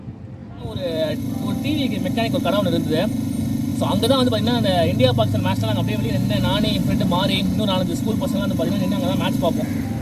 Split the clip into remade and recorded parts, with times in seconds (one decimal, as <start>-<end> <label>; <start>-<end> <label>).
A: 0.0-0.4 recorded; 0.4-1.2 remade; 1.2-6.8 recorded; 6.8-7.4 remade; 7.4-7.9 recorded; 7.9-8.7 remade; 8.7-10.0 recorded